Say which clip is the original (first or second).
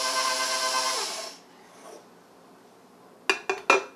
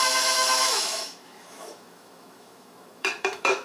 first